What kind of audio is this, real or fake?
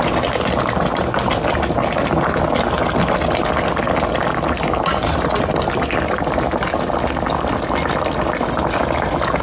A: real